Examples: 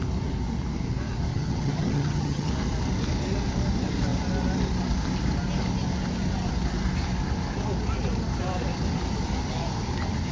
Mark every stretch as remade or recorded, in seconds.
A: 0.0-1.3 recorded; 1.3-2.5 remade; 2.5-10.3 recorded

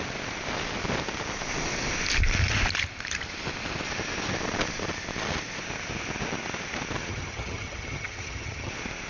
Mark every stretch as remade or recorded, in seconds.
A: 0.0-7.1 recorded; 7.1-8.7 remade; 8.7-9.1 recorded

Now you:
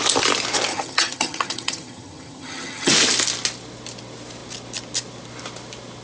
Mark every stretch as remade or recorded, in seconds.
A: 0.0-0.7 recorded; 0.7-2.9 remade; 2.9-6.0 recorded